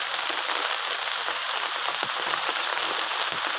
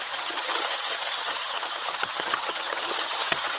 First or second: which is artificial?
second